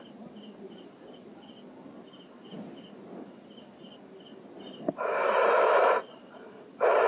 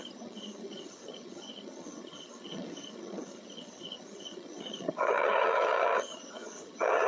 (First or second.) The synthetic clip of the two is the second